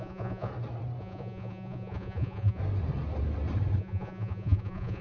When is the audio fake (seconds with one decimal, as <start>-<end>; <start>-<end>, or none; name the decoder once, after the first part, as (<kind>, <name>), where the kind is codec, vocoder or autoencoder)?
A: 0.0-0.5 (vocoder, Vocos); 1.0-2.6; 3.8-5.0